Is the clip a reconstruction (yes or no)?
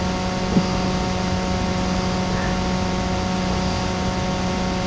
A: no